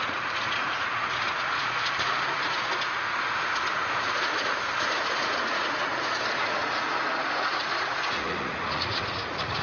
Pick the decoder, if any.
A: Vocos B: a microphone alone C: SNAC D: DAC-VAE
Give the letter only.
A